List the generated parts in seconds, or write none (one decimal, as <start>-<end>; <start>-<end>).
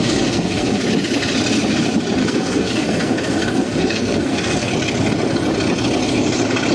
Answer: 0.0-0.8; 2.2-4.7